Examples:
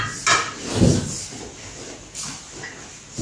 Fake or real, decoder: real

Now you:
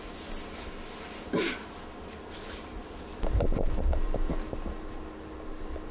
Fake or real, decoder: real